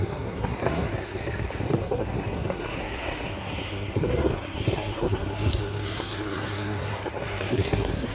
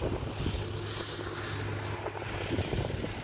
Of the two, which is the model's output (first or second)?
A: first